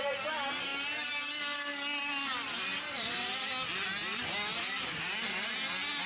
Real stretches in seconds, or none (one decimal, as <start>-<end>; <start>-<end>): 0.0-2.7; 3.5-4.5; 5.1-6.1